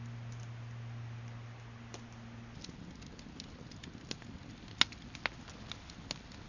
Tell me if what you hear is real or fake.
real